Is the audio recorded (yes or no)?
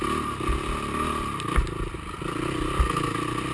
yes